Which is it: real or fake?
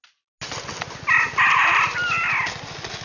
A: real